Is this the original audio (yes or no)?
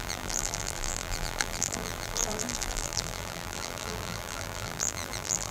no